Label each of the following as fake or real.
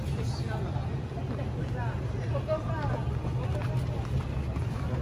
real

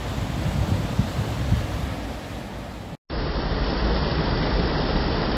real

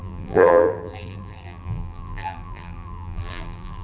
fake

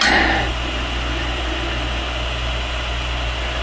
real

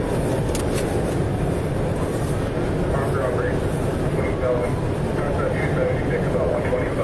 real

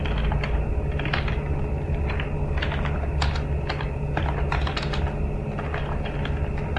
real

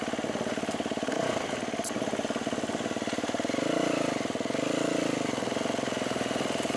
real